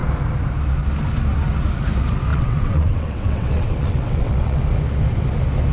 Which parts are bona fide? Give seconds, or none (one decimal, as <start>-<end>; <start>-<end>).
0.0-2.3; 4.6-5.7